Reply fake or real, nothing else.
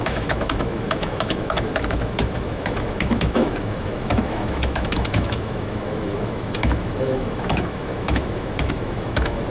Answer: fake